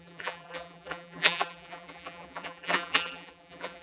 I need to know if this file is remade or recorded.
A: remade